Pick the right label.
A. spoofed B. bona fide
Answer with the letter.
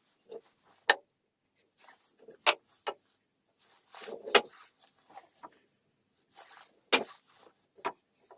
B